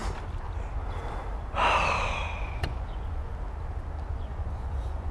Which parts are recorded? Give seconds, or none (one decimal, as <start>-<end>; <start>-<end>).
0.0-2.4; 3.3-4.1